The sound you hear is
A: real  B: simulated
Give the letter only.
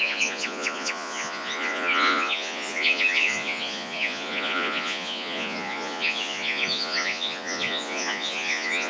B